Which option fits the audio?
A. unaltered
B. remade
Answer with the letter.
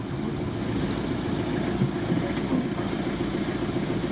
A